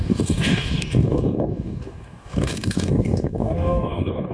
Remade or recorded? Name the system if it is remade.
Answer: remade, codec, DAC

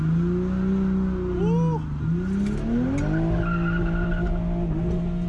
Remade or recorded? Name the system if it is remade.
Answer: recorded